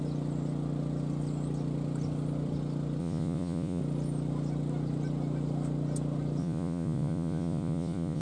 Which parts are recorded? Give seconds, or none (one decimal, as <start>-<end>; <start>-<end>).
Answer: 0.0-3.0; 3.8-6.4